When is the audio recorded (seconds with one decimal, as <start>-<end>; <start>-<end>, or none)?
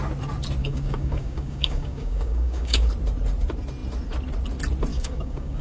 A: 0.0-0.6; 2.9-4.9